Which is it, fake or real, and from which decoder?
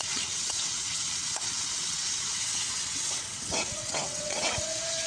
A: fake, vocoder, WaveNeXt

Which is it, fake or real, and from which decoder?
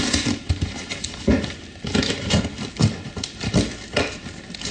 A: real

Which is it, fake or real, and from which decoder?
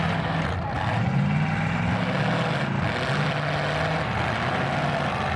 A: real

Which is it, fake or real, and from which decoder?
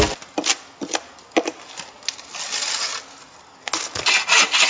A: real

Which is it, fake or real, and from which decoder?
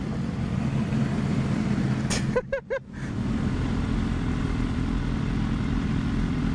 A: real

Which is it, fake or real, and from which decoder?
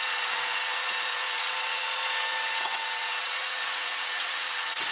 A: fake, vocoder, WaveNeXt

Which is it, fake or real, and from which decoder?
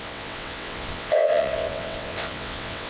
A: fake, vocoder, WaveNeXt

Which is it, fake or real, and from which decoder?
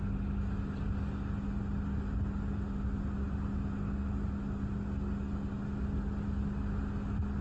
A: real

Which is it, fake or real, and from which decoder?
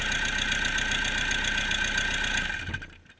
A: real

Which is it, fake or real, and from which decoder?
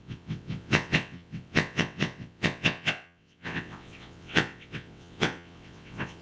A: fake, vocoder, WaveNeXt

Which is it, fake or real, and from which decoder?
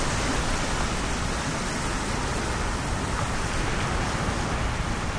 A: real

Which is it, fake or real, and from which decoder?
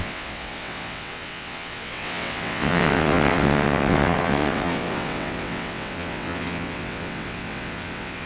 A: fake, vocoder, WaveNeXt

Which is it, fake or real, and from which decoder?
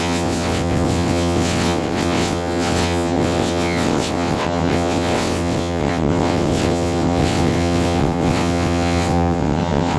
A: fake, vocoder, WaveNeXt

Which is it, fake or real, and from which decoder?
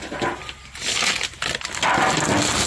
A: real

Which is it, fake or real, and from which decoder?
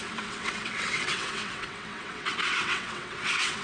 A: fake, vocoder, WaveNeXt